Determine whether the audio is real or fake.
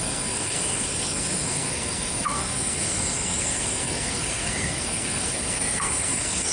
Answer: fake